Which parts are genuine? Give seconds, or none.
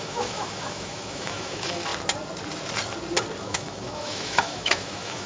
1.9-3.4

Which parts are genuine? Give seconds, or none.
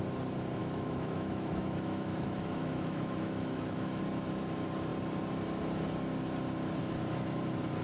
0.0-0.6; 4.0-7.8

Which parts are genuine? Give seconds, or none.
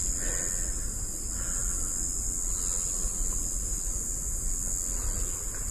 0.0-5.7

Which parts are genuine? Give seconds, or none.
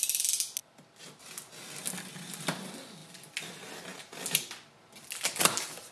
0.0-5.9